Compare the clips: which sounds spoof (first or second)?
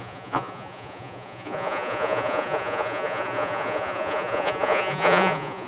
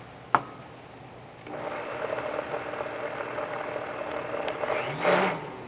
first